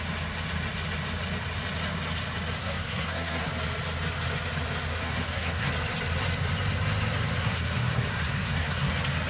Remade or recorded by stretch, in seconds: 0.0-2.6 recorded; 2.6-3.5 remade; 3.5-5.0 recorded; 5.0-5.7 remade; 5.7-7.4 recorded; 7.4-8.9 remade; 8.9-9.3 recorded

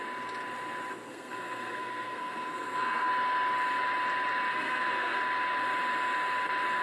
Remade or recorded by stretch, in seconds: 0.0-1.1 recorded; 1.1-3.1 remade; 3.1-4.5 recorded; 4.5-5.2 remade; 5.2-6.8 recorded

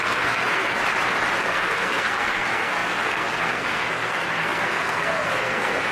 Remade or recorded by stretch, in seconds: 0.0-0.8 remade; 0.8-1.4 recorded; 1.4-5.9 remade

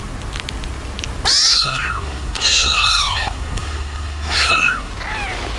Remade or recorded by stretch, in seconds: 0.0-1.5 recorded; 1.5-4.9 remade; 4.9-5.6 recorded

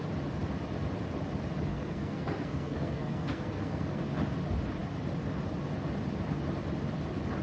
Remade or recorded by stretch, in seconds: 0.0-1.7 recorded; 1.7-4.1 remade; 4.1-7.4 recorded

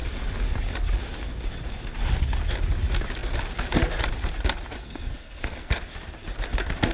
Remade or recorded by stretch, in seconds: 0.0-4.8 recorded; 4.8-5.8 remade; 5.8-6.9 recorded

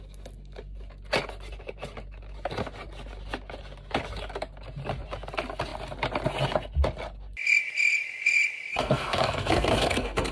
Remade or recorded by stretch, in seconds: 0.0-8.7 recorded; 8.7-10.3 remade